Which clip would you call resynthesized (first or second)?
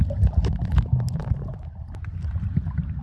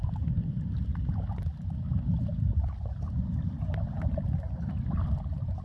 second